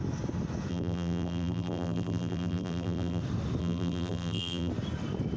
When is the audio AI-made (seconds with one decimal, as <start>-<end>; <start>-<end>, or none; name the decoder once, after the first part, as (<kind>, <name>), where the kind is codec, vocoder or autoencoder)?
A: 0.7-3.2 (vocoder, BigVGAN v2); 3.6-4.7